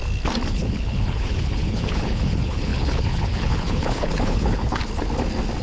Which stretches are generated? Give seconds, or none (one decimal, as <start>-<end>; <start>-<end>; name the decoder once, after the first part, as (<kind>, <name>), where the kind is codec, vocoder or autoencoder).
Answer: 0.5-4.8 (codec, HILCodec)